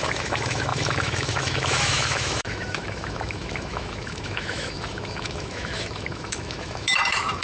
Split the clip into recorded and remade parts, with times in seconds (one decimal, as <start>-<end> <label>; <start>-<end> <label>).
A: 0.0-7.4 remade